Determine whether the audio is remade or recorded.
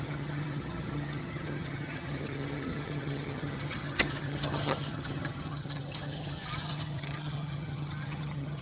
remade